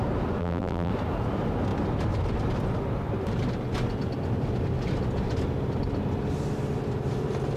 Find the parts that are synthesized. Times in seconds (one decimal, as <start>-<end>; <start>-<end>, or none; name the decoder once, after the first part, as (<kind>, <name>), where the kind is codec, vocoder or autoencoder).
0.4-0.9 (vocoder, BigVGAN v2)